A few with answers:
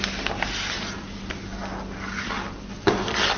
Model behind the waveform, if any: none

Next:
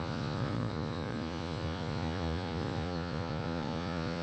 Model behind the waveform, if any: vocoder, Vocos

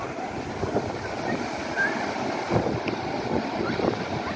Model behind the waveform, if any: none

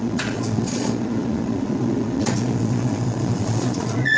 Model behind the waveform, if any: vocoder, Vocos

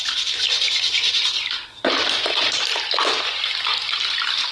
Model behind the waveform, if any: none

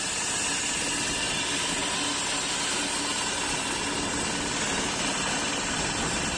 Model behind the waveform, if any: none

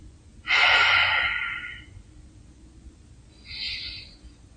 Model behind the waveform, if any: vocoder, Vocos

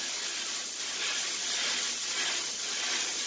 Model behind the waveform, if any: none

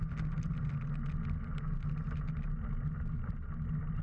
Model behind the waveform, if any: none